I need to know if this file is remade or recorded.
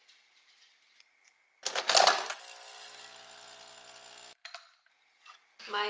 recorded